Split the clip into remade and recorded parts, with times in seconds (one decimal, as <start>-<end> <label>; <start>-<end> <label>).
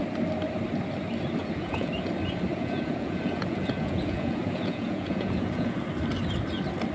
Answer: 0.0-1.4 recorded; 1.4-1.9 remade; 1.9-2.5 recorded; 2.5-5.8 remade; 5.8-6.9 recorded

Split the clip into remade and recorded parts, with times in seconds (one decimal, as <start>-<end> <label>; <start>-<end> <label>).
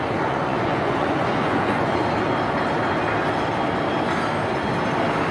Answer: 0.0-2.0 remade; 2.0-5.3 recorded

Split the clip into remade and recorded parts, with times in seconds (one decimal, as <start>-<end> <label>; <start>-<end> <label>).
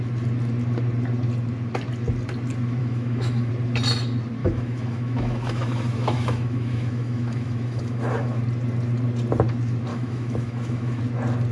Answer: 0.0-2.8 recorded; 2.8-3.5 remade; 3.5-4.4 recorded; 4.4-8.4 remade; 8.4-9.9 recorded; 9.9-11.0 remade; 11.0-11.5 recorded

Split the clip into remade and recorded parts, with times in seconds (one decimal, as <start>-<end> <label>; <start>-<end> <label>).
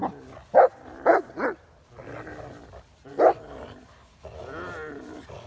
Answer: 0.0-5.5 recorded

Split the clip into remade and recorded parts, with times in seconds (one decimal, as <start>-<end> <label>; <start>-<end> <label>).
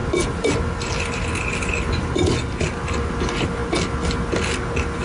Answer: 0.0-5.0 recorded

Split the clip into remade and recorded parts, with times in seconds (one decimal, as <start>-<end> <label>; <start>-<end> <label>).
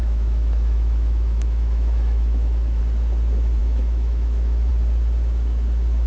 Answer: 0.0-2.8 remade; 2.8-3.6 recorded; 3.6-4.7 remade; 4.7-6.1 recorded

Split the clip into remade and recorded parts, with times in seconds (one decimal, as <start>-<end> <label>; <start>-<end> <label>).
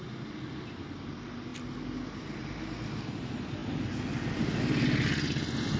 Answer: 0.0-5.8 recorded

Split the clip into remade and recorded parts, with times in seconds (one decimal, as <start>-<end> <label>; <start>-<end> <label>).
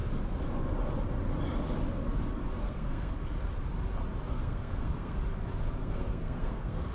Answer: 0.0-2.6 recorded; 2.6-3.1 remade; 3.1-4.3 recorded; 4.3-5.2 remade; 5.2-5.8 recorded; 5.8-6.9 remade